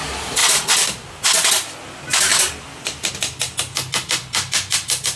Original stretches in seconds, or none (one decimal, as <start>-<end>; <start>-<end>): 0.0-2.3; 3.1-5.2

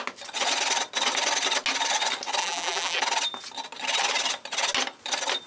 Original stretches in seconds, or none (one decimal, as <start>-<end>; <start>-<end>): 0.0-2.4; 3.0-5.5

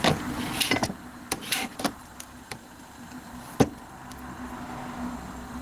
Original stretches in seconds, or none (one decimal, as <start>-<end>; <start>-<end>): 0.0-0.8; 3.4-5.6

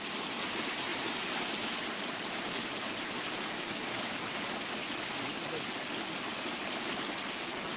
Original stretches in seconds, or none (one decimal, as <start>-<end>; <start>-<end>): 0.0-0.9; 4.7-7.8

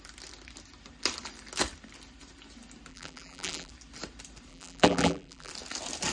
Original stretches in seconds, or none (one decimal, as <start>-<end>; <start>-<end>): 0.0-2.9; 3.7-4.5; 5.5-6.1